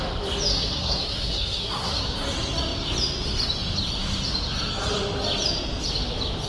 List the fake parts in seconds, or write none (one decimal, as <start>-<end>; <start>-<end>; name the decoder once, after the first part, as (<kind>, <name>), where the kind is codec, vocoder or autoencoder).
0.5-2.0 (codec, SNAC)